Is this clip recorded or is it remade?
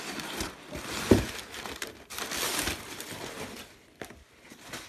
recorded